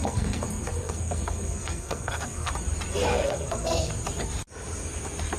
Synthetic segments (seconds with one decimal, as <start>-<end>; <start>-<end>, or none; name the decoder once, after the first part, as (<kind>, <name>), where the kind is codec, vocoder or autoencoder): 0.0-2.5 (codec, SNAC); 3.1-3.9